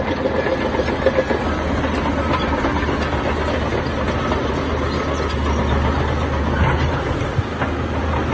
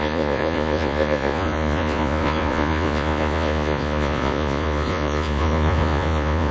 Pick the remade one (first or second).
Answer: second